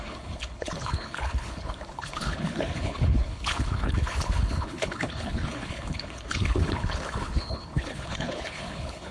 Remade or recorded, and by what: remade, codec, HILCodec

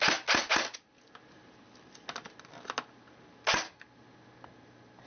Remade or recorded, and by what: recorded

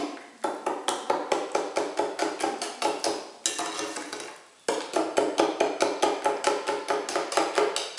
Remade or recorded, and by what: recorded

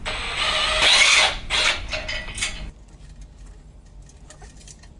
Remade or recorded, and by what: recorded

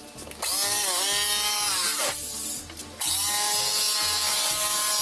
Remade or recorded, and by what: recorded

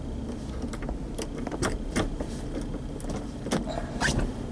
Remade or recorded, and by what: recorded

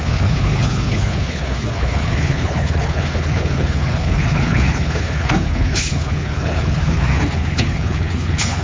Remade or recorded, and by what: remade, codec, HILCodec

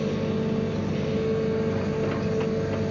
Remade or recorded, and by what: recorded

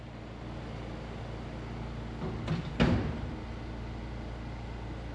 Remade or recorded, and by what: recorded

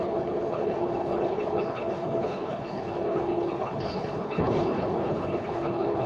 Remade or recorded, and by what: remade, codec, HILCodec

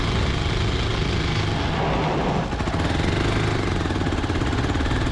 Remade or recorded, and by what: recorded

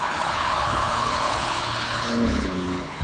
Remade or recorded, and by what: remade, codec, HILCodec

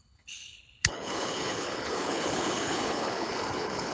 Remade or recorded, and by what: remade, codec, HILCodec